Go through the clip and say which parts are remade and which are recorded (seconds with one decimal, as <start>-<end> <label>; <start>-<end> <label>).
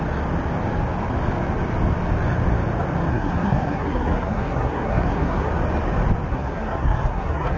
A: 0.0-3.1 recorded; 3.1-5.5 remade; 5.5-6.3 recorded; 6.3-7.6 remade